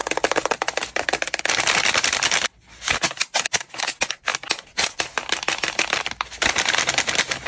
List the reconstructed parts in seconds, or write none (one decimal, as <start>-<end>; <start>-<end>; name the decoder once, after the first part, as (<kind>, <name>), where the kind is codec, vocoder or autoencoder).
none